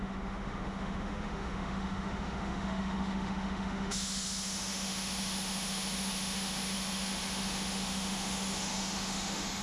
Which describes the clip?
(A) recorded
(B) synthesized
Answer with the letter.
B